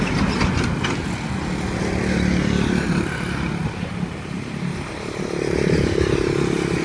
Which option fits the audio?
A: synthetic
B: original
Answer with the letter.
B